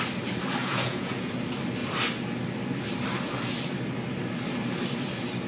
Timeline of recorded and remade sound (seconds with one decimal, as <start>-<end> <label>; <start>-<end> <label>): 0.0-0.6 recorded; 0.6-1.3 remade; 1.3-5.5 recorded